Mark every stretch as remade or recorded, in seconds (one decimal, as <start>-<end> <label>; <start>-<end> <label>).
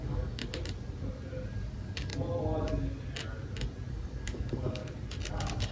0.0-0.4 remade; 0.4-1.7 recorded; 1.7-2.1 remade; 2.1-3.9 recorded; 3.9-4.8 remade; 4.8-5.3 recorded; 5.3-5.7 remade